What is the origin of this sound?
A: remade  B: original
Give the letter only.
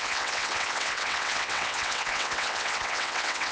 A